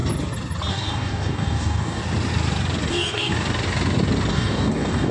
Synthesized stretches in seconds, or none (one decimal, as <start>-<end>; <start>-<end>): 0.7-2.0; 2.9-3.3; 4.3-5.1